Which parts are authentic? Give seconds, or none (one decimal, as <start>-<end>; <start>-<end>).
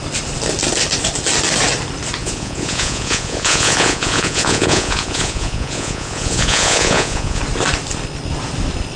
0.0-2.2; 7.4-9.0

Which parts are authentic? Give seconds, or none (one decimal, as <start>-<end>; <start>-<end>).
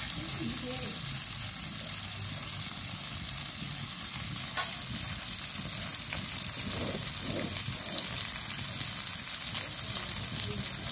0.0-10.9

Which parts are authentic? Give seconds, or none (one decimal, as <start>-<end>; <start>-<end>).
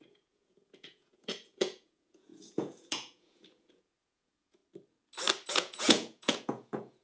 4.6-5.5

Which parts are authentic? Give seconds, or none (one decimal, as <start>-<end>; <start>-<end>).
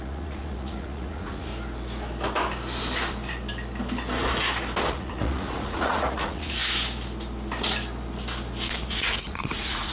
1.5-4.9; 6.6-8.9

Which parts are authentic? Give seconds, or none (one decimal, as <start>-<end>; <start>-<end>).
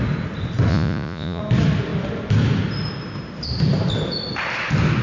0.0-0.7; 1.4-5.0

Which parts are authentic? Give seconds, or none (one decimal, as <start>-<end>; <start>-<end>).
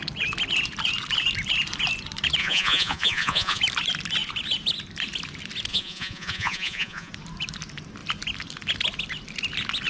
0.0-2.4; 3.6-5.7; 7.1-9.9